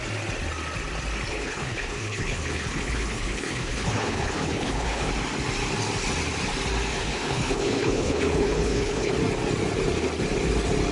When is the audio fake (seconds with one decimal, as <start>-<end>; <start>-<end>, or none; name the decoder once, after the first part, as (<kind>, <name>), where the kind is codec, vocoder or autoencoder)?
1.3-5.1 (codec, HILCodec); 6.9-9.1